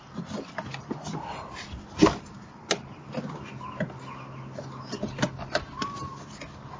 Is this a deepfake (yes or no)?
no